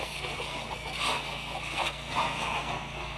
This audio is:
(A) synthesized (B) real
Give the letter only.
A